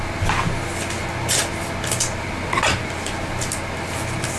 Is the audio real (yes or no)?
yes